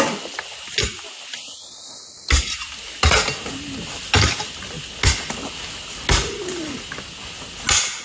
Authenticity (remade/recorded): recorded